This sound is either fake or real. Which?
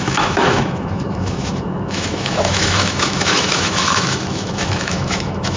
fake